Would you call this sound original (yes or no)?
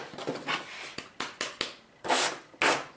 yes